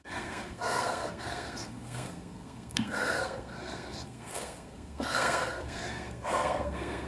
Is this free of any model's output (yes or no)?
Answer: no